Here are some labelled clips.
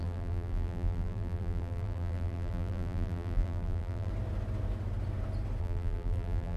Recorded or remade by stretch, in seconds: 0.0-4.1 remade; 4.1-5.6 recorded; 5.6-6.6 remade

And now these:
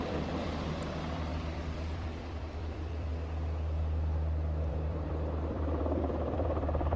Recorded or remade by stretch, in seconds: 0.0-3.1 remade; 3.1-4.7 recorded; 4.7-7.0 remade

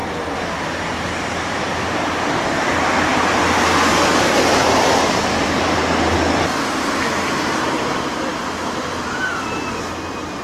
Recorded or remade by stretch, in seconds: 0.0-1.0 remade; 1.0-4.6 recorded; 4.6-5.5 remade; 5.5-10.4 recorded

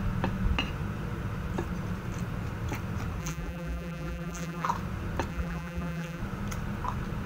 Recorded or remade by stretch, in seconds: 0.0-3.2 recorded; 3.2-4.7 remade; 4.7-5.3 recorded; 5.3-6.2 remade; 6.2-7.3 recorded

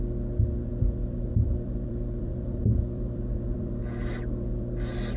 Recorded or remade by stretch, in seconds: 0.0-0.7 recorded; 0.7-3.8 remade; 3.8-5.2 recorded

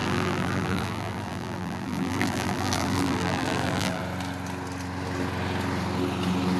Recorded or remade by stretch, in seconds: 0.0-4.0 remade; 4.0-6.6 recorded

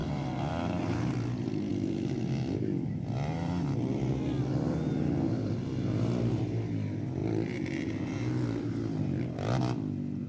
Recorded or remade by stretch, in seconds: 0.0-7.2 recorded; 7.2-8.7 remade; 8.7-10.3 recorded

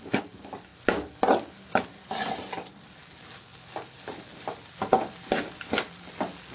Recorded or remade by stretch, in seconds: 0.0-6.5 recorded